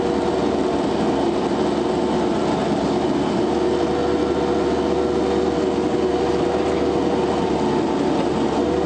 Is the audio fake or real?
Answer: real